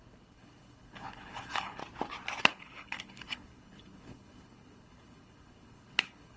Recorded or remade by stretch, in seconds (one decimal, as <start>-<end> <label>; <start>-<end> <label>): 0.0-1.8 remade; 1.8-2.5 recorded; 2.5-6.4 remade